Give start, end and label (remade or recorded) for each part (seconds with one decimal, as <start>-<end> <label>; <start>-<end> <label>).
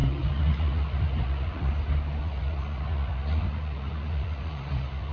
0.0-1.7 remade; 1.7-2.2 recorded; 2.2-5.1 remade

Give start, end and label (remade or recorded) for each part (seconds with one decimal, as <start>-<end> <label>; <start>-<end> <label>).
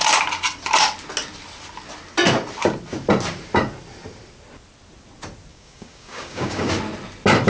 0.0-5.5 recorded; 5.5-6.7 remade; 6.7-7.5 recorded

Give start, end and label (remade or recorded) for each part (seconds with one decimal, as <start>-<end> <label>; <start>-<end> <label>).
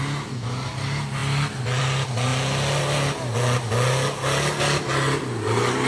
0.0-5.9 recorded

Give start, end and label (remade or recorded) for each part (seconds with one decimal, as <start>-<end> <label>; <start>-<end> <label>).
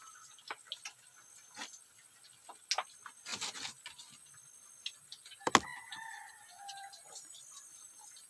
0.0-8.3 recorded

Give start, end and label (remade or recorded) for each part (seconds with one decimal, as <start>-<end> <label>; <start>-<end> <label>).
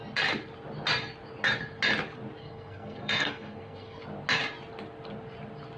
0.0-2.4 recorded; 2.4-4.0 remade; 4.0-5.8 recorded